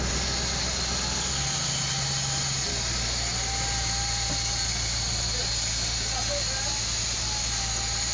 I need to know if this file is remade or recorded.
recorded